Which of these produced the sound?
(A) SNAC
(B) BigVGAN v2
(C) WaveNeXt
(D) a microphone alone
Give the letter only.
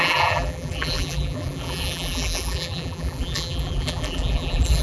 B